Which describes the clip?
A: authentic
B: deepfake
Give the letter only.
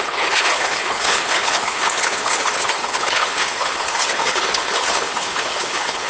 B